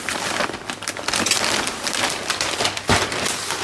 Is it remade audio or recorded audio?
recorded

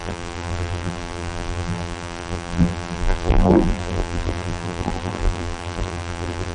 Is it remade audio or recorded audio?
remade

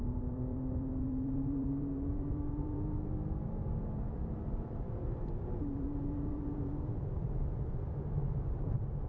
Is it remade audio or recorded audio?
remade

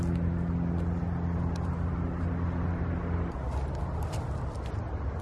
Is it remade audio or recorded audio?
recorded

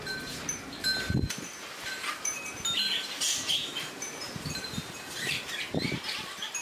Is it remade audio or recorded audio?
remade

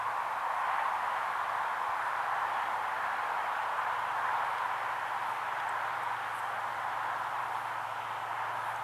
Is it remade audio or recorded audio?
recorded